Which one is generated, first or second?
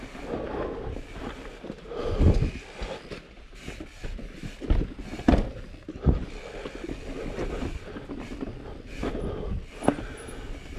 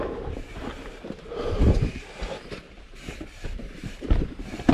second